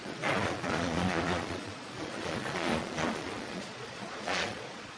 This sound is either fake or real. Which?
fake